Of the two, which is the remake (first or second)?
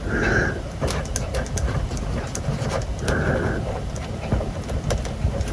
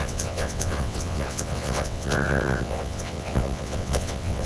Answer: second